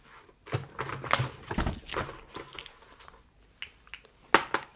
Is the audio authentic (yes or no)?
yes